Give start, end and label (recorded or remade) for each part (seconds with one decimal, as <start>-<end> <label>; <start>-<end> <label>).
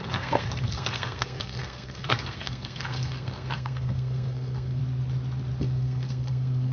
0.0-4.8 remade; 4.8-5.6 recorded; 5.6-6.7 remade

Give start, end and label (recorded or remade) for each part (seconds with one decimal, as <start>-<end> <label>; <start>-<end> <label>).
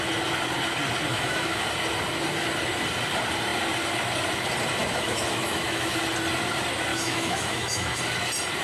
0.0-1.1 recorded; 1.1-1.7 remade; 1.7-4.8 recorded; 4.8-6.0 remade; 6.0-6.9 recorded; 6.9-8.0 remade; 8.0-8.6 recorded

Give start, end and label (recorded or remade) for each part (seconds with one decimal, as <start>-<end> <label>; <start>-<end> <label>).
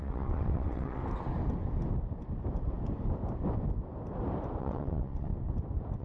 0.0-1.0 remade; 1.0-4.6 recorded; 4.6-5.3 remade; 5.3-6.0 recorded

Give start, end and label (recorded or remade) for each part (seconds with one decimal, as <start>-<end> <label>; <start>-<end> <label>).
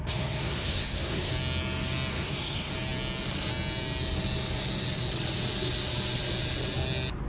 0.0-1.3 remade; 1.3-2.1 recorded; 2.1-2.7 remade; 2.7-7.3 recorded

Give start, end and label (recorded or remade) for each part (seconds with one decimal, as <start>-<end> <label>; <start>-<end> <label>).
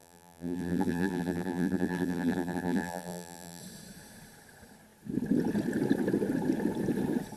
0.0-3.6 remade; 3.6-7.4 recorded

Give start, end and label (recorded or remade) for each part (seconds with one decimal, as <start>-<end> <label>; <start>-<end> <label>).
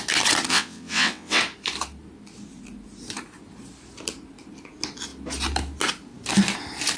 0.0-0.5 recorded; 0.5-1.4 remade; 1.4-7.0 recorded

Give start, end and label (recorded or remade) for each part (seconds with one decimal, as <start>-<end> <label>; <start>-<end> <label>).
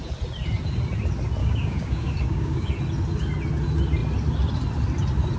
0.0-1.4 recorded; 1.4-2.7 remade; 2.7-5.4 recorded